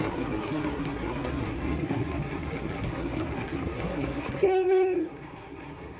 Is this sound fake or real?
fake